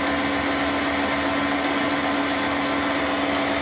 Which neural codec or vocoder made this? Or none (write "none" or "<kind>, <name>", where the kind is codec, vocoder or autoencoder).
none